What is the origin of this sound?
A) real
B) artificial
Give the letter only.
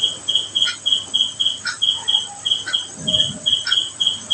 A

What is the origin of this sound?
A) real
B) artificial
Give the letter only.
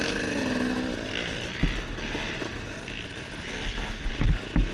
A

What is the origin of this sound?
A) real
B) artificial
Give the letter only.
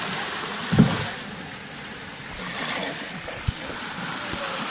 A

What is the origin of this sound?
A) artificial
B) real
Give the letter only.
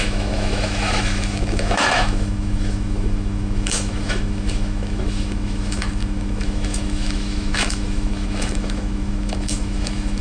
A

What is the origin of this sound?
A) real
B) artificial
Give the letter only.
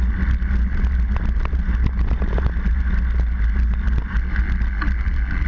A